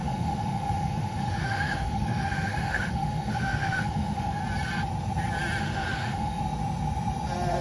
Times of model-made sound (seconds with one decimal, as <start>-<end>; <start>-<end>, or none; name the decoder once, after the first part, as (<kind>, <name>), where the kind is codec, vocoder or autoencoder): 0.0-4.4 (autoencoder, DAC-VAE); 5.6-6.4